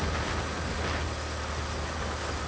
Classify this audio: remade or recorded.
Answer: recorded